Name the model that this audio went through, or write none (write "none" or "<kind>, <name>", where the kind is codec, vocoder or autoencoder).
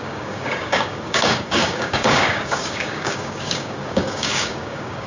codec, DAC